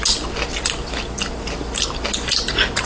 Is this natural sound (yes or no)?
yes